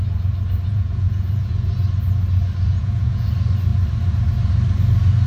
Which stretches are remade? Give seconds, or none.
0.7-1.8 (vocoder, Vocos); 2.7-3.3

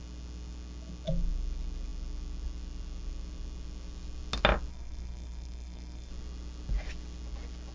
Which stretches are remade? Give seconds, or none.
4.7-6.1 (codec, SNAC)

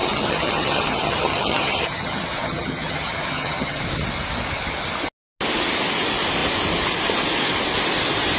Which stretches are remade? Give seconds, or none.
0.0-3.8 (vocoder, HiFi-GAN)

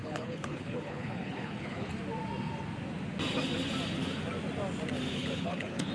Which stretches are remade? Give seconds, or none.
0.0-1.9 (codec, HILCodec); 5.1-5.9